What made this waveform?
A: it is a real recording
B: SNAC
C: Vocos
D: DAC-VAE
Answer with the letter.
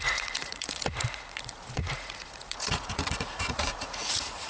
C